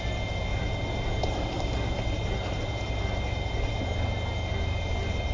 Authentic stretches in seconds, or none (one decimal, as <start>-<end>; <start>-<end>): 0.0-0.5; 3.7-5.3